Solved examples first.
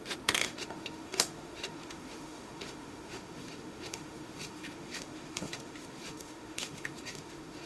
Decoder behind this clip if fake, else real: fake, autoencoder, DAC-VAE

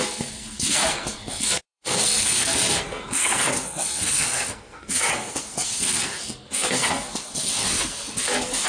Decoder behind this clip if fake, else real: fake, codec, SNAC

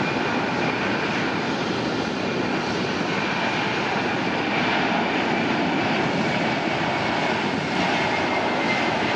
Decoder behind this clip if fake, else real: real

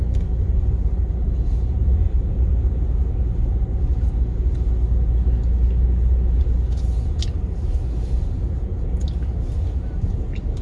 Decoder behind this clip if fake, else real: real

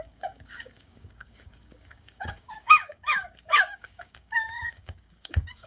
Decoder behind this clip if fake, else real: fake, codec, DAC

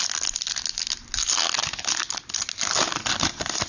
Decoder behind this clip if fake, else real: real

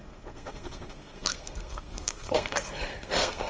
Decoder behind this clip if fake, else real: fake, codec, SNAC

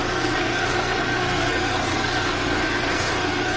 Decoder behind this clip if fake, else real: fake, codec, SNAC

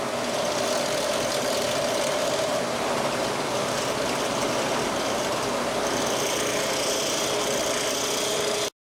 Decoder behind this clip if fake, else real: real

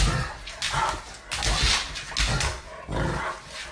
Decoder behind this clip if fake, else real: real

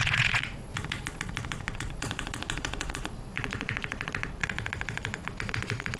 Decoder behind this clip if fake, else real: fake, vocoder, Vocos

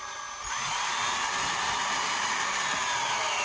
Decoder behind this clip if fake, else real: real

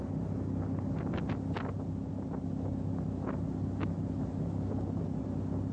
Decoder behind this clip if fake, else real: real